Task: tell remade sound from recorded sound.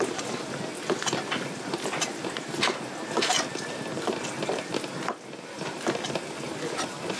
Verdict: recorded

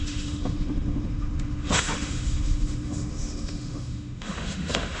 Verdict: remade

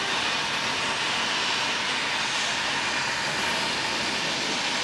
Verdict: recorded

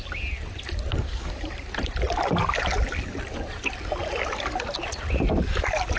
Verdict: recorded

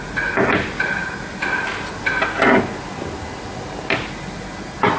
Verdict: recorded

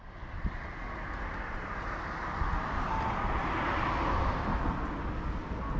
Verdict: recorded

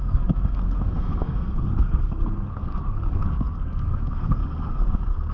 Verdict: remade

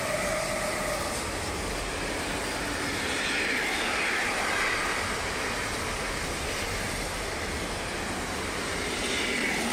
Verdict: recorded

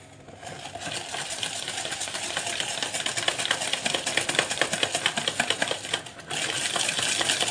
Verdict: recorded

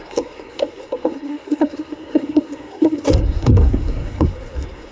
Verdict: remade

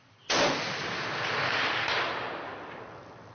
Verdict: recorded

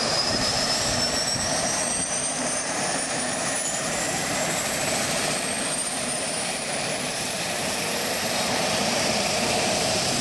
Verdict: remade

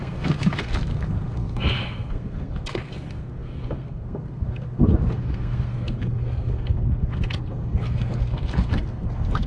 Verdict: remade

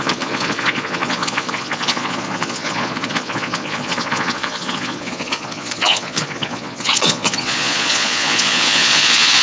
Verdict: remade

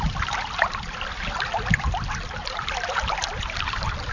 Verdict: recorded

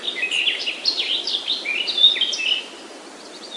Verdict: recorded